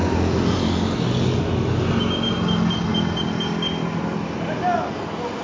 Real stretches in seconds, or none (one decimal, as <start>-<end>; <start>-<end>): 0.0-5.4